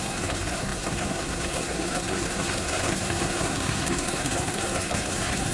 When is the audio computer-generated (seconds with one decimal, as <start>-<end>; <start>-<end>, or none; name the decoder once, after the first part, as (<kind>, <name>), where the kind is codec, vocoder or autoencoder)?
0.0-5.5 (codec, SNAC)

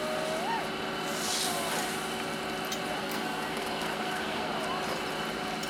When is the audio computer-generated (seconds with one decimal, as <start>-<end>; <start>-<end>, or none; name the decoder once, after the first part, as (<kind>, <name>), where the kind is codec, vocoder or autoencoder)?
3.0-4.5 (codec, SNAC)

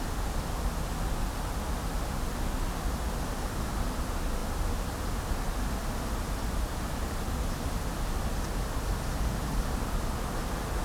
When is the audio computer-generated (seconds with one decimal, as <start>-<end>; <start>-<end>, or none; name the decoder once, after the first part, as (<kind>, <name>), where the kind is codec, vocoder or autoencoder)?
none